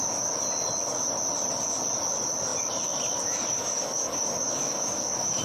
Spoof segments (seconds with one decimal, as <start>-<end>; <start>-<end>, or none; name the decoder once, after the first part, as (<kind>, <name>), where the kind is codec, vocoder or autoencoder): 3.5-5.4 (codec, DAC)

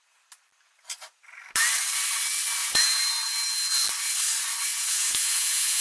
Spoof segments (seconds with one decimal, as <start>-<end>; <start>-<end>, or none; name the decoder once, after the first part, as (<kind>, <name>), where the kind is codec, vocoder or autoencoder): 2.6-3.1 (vocoder, Vocos); 4.7-5.8

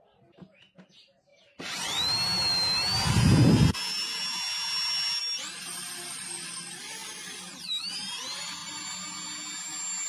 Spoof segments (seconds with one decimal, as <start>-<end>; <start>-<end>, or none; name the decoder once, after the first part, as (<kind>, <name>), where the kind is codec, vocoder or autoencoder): none

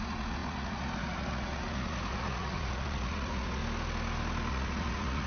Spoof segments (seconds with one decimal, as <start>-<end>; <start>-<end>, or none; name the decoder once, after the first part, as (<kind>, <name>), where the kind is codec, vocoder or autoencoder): 0.0-3.6 (vocoder, Vocos); 4.5-5.3